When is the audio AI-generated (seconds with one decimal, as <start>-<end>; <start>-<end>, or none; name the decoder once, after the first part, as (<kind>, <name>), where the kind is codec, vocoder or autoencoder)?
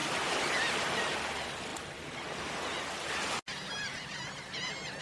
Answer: none